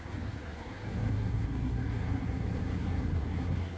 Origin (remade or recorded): remade